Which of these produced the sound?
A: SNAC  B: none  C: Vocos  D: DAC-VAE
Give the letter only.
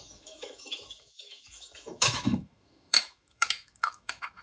D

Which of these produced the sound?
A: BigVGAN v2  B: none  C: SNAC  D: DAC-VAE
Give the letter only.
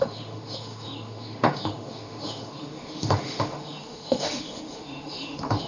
D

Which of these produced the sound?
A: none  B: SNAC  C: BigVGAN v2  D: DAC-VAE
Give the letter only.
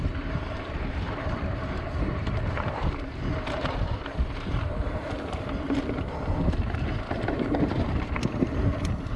C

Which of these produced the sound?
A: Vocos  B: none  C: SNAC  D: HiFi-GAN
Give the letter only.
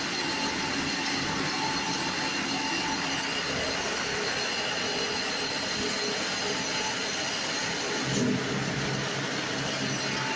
B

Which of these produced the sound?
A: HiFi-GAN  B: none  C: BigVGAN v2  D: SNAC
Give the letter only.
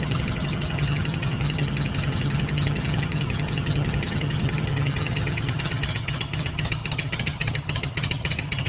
A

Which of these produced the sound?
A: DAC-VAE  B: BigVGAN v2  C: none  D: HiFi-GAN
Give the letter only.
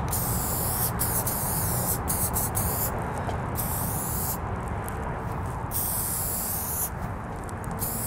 C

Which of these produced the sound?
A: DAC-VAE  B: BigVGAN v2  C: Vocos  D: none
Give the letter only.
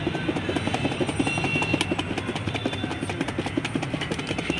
D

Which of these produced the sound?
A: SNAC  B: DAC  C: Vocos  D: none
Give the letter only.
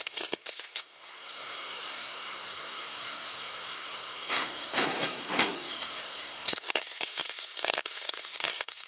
A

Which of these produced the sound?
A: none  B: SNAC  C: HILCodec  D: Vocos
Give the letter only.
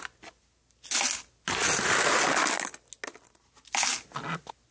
A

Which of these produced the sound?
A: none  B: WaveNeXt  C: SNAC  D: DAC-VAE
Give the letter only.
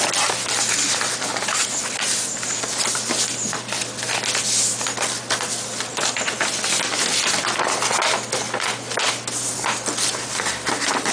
A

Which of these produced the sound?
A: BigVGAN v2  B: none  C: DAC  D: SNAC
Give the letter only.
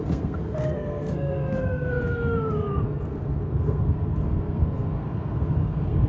D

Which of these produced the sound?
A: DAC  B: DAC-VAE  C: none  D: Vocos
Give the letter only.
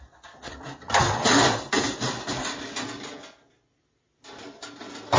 C